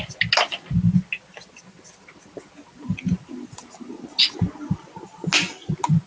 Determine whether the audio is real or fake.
real